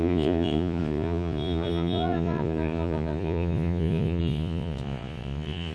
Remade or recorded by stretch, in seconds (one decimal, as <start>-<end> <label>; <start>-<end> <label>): 0.0-5.7 remade